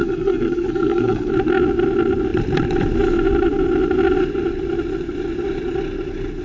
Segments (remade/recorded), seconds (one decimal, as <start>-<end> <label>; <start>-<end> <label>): 0.0-1.3 remade; 1.3-6.4 recorded